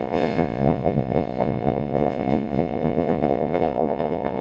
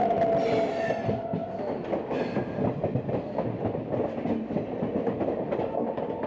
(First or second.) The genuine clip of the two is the second